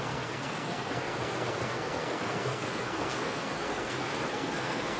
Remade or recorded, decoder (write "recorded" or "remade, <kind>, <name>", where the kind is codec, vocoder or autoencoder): remade, codec, SNAC